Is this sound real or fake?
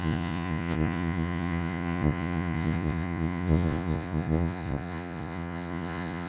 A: fake